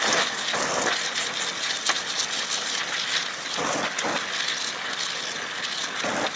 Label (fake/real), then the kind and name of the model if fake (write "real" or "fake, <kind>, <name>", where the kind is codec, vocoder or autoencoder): real